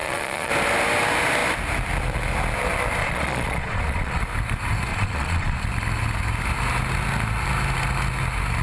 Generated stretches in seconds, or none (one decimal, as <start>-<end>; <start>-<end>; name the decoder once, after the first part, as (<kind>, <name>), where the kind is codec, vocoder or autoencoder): 0.0-0.5 (vocoder, Vocos); 3.0-4.2; 4.9-5.6